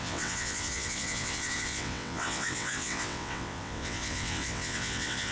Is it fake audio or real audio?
fake